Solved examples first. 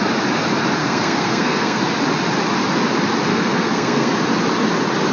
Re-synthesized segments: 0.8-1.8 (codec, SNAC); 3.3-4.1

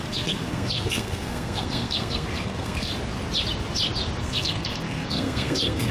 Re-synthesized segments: 0.0-2.9 (codec, SNAC); 4.2-5.9

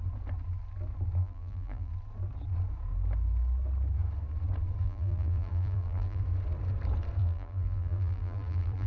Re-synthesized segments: 1.2-1.9 (vocoder, BigVGAN v2); 4.8-6.2; 7.2-8.9

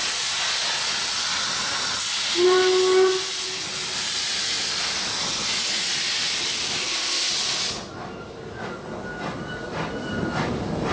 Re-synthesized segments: 6.8-7.3 (codec, ZipCodec)

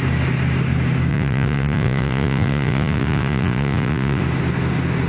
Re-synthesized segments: 1.1-4.2 (vocoder, Vocos)

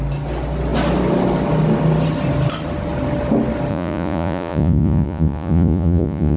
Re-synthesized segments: 3.7-6.4 (vocoder, Vocos)

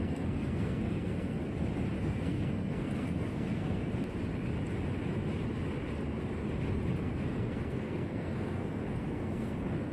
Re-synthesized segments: 0.0-1.4 (codec, SNAC); 2.0-3.9; 7.0-9.9